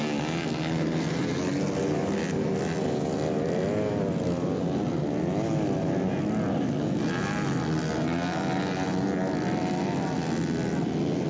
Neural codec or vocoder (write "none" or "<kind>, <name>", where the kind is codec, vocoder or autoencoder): none